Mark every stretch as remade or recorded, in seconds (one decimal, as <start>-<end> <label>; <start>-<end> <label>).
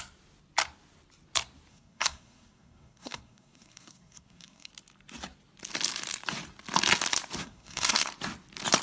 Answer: 0.0-1.7 recorded; 1.7-4.7 remade; 4.7-7.4 recorded; 7.4-8.1 remade; 8.1-8.8 recorded